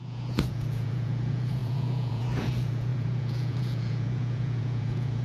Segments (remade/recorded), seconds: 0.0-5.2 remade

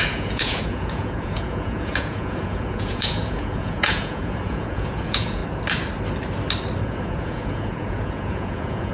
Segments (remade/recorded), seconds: 0.0-5.4 remade; 5.4-6.8 recorded; 6.8-8.9 remade

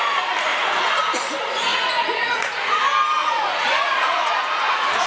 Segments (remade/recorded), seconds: 0.0-0.5 recorded; 0.5-1.0 remade; 1.0-1.7 recorded; 1.7-2.8 remade; 2.8-3.2 recorded; 3.2-5.1 remade

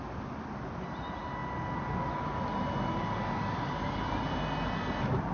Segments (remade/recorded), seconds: 0.0-5.3 recorded

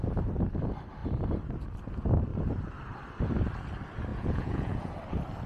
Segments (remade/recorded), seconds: 0.0-4.1 recorded; 4.1-4.9 remade; 4.9-5.5 recorded

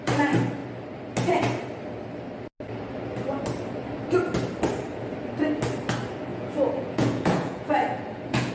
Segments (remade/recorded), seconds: 0.0-6.3 recorded; 6.3-8.5 remade